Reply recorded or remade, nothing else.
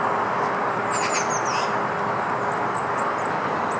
recorded